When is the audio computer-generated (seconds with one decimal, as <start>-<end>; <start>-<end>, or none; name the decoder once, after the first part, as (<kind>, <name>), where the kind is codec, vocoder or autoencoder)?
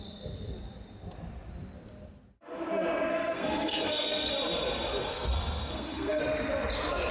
3.1-4.3 (codec, SNAC); 5.1-6.2